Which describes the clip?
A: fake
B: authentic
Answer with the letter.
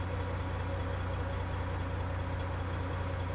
B